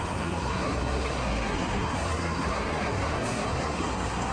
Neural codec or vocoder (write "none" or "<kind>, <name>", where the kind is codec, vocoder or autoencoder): codec, SNAC